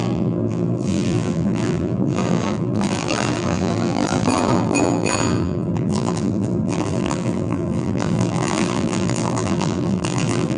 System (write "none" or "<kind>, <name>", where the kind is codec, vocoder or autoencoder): vocoder, BigVGAN v2